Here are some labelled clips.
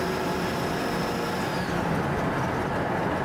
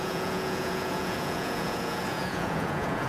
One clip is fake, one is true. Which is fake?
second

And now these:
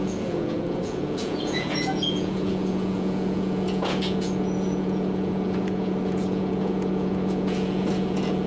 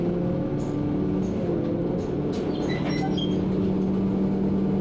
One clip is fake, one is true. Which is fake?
first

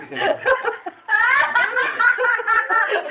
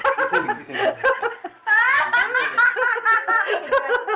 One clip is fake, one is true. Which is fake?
first